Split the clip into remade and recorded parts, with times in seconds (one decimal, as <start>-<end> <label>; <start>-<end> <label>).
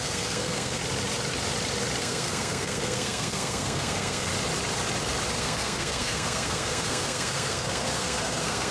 0.0-0.8 remade; 0.8-2.0 recorded; 2.0-4.3 remade; 4.3-5.4 recorded; 5.4-8.7 remade